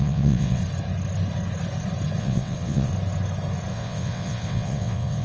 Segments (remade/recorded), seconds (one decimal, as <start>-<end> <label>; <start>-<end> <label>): 0.0-0.6 remade; 0.6-2.2 recorded; 2.2-2.9 remade; 2.9-3.7 recorded; 3.7-5.2 remade